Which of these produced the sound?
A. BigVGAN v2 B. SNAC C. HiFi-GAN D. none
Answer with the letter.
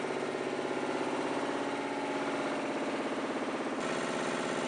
D